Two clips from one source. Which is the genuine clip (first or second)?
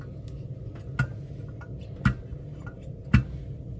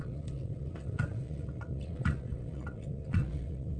first